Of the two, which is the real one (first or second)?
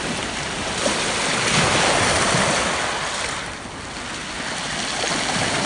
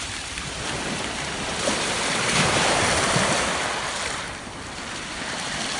first